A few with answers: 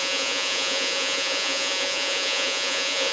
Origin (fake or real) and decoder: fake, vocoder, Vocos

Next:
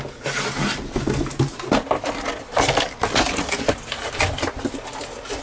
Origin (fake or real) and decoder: real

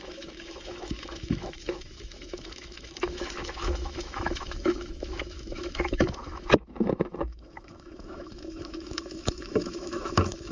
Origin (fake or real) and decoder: fake, autoencoder, DAC-VAE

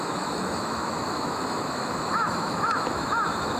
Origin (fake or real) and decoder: fake, autoencoder, DAC-VAE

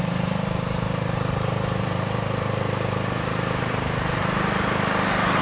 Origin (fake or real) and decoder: fake, vocoder, BigVGAN v2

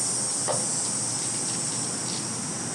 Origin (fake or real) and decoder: real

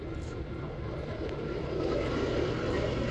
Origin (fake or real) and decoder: real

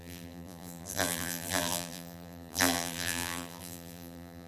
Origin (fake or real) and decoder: fake, vocoder, BigVGAN v2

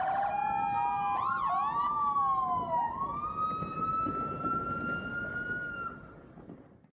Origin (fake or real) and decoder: real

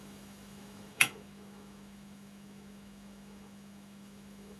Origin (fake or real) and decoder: fake, autoencoder, DAC-VAE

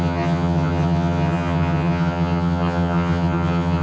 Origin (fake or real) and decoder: fake, vocoder, HiFi-GAN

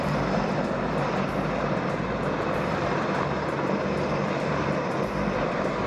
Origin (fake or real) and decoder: real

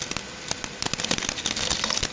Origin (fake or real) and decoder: real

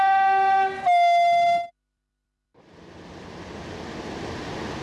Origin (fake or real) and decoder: real